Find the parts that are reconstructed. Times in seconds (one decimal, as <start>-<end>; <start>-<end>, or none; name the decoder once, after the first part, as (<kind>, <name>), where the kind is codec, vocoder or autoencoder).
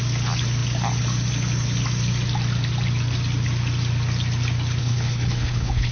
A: 4.8-5.9 (codec, HILCodec)